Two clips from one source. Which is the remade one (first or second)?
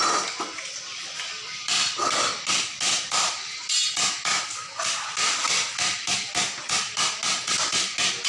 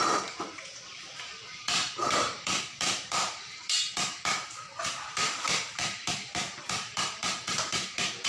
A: second